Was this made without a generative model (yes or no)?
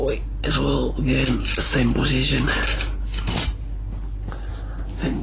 yes